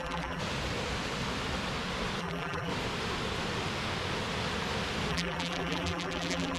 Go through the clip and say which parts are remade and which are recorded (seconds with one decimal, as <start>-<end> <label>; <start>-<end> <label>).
0.0-0.4 remade; 0.4-2.2 recorded; 2.2-2.7 remade; 2.7-5.1 recorded; 5.1-6.6 remade